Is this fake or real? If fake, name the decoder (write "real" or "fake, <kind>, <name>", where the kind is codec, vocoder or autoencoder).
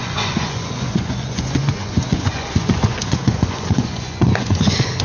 fake, vocoder, Vocos